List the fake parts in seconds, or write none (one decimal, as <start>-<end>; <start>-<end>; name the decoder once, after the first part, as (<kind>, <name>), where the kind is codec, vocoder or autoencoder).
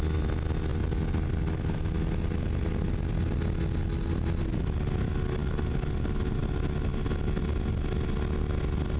none